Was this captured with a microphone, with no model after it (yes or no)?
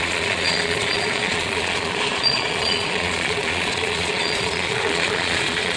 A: no